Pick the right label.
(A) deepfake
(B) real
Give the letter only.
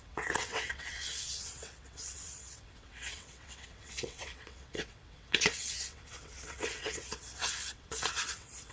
A